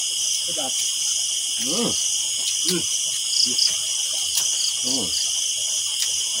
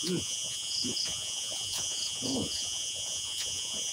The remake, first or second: second